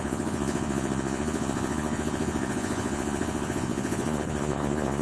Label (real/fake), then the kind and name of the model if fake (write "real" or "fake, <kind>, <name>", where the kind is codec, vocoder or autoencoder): fake, vocoder, Vocos